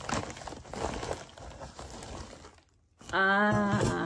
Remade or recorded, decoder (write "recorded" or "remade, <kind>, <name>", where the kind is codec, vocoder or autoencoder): recorded